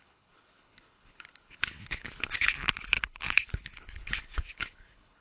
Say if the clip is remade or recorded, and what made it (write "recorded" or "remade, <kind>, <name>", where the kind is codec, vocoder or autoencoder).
remade, codec, HILCodec